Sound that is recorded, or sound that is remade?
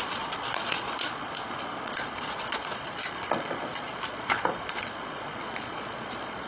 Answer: remade